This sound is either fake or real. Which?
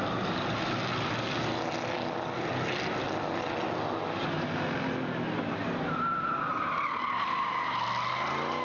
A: real